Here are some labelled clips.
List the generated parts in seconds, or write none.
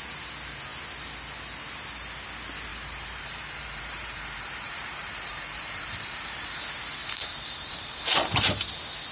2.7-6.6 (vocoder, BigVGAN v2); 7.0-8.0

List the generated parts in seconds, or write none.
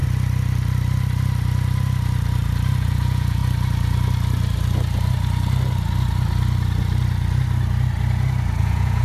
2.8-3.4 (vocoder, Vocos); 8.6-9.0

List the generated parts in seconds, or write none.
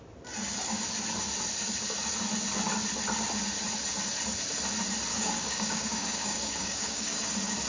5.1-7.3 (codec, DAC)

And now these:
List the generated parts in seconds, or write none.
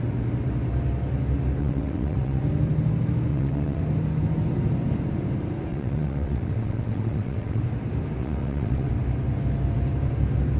1.6-2.4 (vocoder, WaveNeXt); 3.3-3.8; 5.7-7.6; 8.2-8.9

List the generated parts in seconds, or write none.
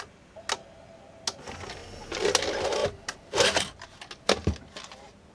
none